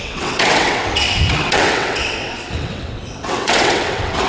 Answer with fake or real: fake